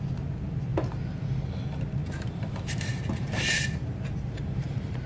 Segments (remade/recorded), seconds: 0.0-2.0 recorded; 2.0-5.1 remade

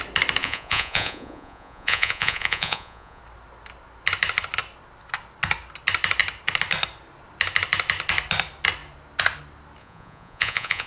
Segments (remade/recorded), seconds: 0.0-0.4 recorded; 0.4-3.2 remade; 3.2-9.8 recorded; 9.8-10.9 remade

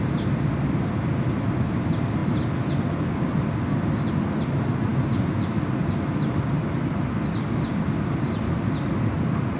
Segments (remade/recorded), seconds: 0.0-9.6 recorded

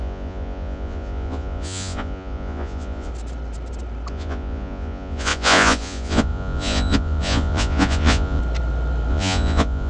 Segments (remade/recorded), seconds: 0.0-3.1 remade; 3.1-4.1 recorded; 4.1-8.4 remade; 8.4-9.1 recorded; 9.1-9.9 remade

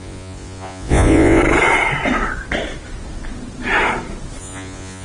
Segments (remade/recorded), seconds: 0.0-1.4 remade; 1.4-4.4 recorded; 4.4-5.0 remade